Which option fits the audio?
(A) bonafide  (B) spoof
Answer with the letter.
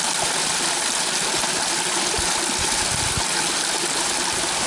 A